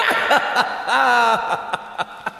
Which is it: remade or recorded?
recorded